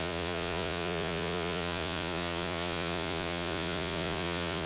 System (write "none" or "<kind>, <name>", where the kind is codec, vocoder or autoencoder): vocoder, Vocos